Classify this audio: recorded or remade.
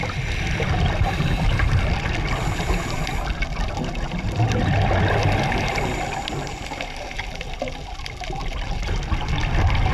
recorded